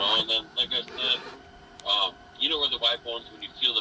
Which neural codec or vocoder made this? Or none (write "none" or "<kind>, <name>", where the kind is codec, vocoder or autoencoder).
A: none